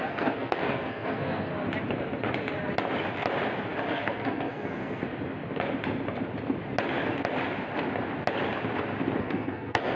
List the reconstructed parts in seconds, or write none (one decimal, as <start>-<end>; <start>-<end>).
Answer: 0.0-1.5; 3.8-5.1; 9.2-10.0